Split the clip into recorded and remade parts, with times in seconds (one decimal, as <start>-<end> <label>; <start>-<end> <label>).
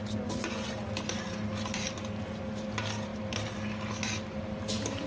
0.0-5.1 recorded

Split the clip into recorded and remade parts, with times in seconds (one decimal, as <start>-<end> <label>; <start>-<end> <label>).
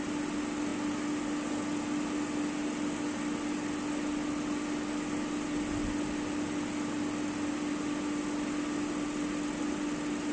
0.0-10.3 recorded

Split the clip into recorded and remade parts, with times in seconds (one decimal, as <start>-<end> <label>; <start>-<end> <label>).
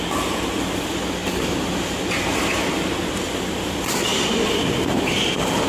0.0-1.2 remade; 1.2-3.1 recorded; 3.1-4.1 remade; 4.1-5.1 recorded; 5.1-5.7 remade